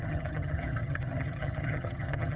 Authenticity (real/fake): fake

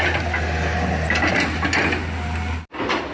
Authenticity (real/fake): real